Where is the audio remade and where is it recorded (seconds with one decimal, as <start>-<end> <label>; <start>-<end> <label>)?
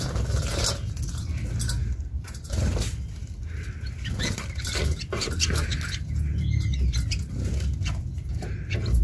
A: 0.0-1.8 recorded; 1.8-2.8 remade; 2.8-8.3 recorded; 8.3-9.0 remade